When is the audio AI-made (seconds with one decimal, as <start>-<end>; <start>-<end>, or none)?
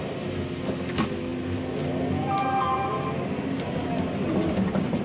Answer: none